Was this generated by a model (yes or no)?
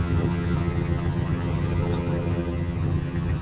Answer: yes